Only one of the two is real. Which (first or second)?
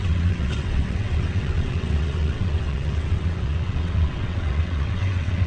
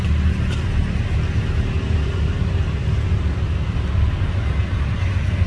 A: second